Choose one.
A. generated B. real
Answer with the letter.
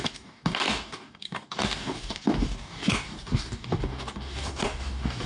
A